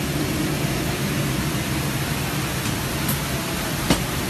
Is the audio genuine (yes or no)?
yes